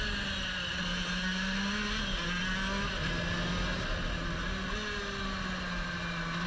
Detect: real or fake real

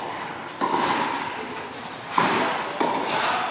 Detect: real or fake fake